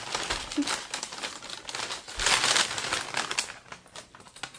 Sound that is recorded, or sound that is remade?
recorded